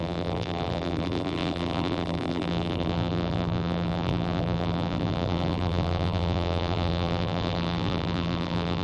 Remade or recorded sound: remade